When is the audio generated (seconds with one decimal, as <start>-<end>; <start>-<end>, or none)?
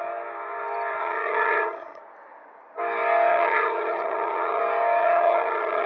1.0-2.0; 3.3-4.6; 5.0-5.9